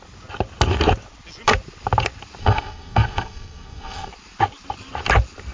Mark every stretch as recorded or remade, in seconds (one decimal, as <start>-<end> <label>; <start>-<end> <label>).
0.0-2.4 recorded; 2.4-4.1 remade; 4.1-5.5 recorded